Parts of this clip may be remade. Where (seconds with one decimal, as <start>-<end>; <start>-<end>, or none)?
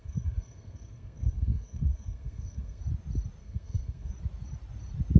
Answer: 0.0-2.8; 3.4-4.1